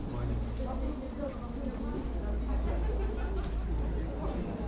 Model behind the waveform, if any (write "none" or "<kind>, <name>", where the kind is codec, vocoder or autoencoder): none